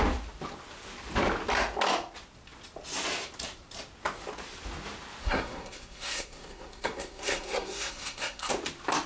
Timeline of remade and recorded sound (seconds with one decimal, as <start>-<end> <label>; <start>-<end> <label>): 0.0-5.2 recorded; 5.2-8.5 remade; 8.5-9.1 recorded